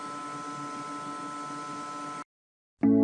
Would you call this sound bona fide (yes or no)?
yes